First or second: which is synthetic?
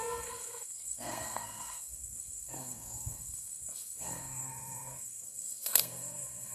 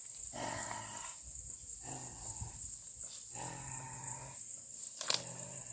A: first